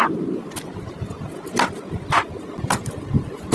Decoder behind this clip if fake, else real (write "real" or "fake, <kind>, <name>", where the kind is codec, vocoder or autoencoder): real